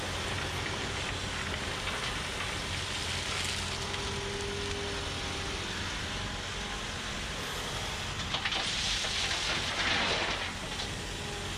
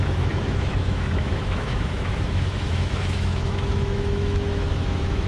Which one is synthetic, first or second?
second